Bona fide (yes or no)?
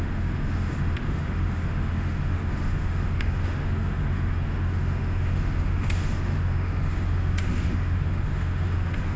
no